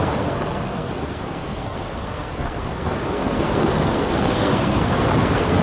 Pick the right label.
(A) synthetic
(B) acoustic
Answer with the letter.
A